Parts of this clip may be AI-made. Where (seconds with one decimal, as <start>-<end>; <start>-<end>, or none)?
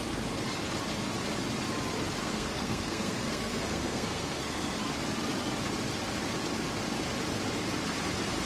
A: 2.2-4.8